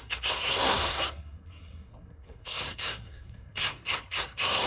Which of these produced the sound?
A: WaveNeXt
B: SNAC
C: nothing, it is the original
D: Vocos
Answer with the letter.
B